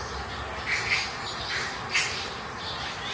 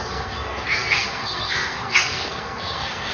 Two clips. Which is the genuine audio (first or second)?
first